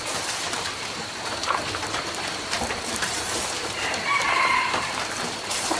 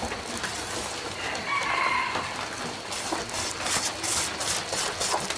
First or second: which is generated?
first